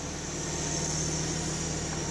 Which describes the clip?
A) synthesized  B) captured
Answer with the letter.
B